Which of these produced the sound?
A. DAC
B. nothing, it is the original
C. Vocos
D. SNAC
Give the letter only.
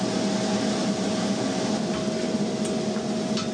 B